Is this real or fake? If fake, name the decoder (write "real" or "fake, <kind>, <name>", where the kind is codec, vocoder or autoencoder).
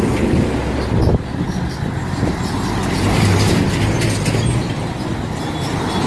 real